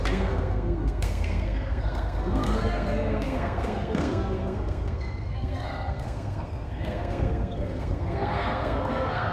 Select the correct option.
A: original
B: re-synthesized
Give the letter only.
B